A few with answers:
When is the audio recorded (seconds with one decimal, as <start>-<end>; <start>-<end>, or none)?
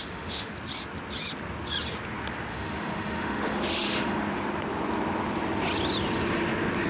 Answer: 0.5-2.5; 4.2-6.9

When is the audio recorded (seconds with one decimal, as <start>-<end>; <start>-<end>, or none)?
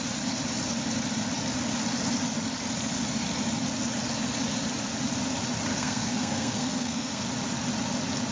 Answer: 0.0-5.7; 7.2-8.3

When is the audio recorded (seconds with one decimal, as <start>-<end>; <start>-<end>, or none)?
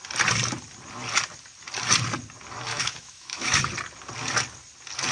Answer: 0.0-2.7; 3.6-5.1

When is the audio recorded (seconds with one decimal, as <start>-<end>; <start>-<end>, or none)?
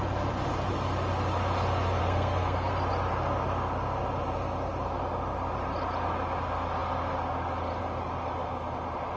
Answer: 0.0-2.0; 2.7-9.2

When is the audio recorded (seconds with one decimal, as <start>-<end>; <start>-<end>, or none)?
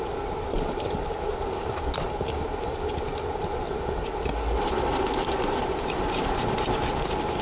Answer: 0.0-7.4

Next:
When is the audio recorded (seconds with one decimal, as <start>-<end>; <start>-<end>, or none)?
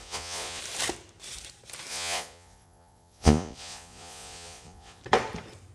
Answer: 0.6-1.9; 5.0-5.7